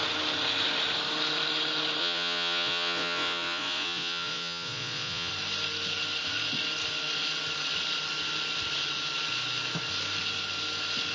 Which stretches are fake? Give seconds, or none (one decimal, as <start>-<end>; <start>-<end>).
2.0-5.3